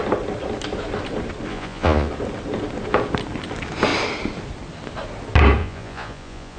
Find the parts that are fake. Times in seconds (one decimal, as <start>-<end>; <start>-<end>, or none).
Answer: 1.5-2.1; 5.6-6.6